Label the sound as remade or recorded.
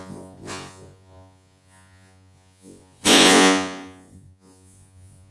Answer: remade